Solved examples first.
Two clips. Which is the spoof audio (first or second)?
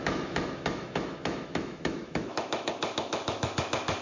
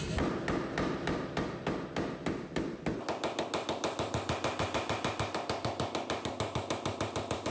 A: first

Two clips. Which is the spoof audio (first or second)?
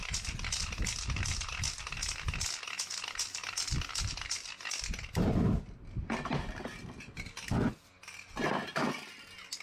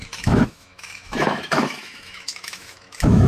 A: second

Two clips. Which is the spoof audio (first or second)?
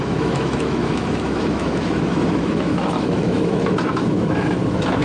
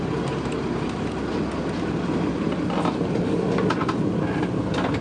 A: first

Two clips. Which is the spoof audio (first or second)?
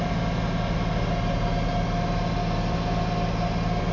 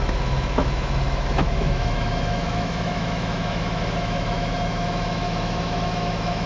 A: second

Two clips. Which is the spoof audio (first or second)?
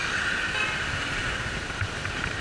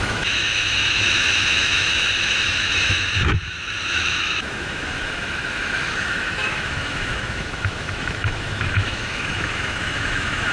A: second